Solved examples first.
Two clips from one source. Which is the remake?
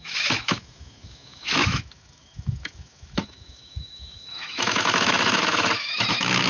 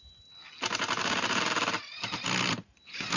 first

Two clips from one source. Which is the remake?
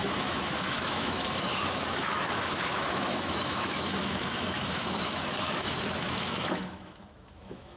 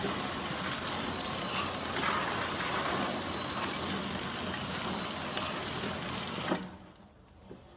first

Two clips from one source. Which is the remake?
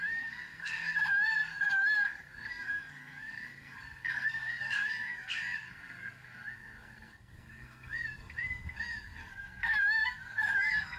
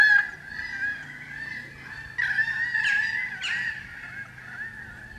first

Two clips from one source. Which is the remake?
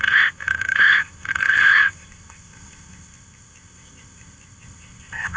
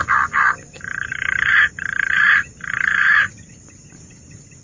first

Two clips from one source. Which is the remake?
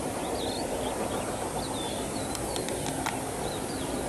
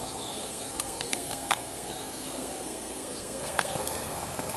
second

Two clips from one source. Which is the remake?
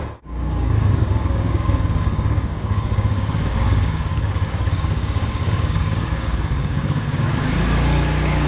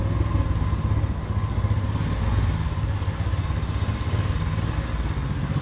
first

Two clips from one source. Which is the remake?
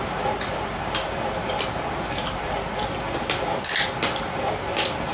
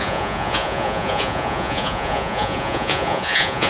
second